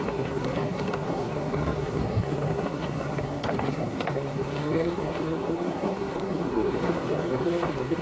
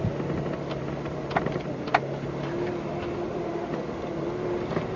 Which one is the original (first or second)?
second